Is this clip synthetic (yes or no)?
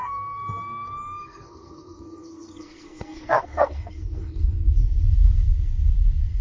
yes